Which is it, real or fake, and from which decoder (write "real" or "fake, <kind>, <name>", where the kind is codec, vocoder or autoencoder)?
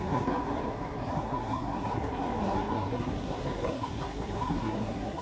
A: fake, codec, SNAC